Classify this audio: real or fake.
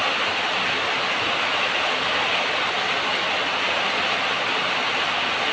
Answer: real